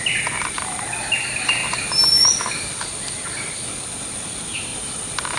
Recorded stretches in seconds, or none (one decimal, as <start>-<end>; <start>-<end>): 0.0-5.4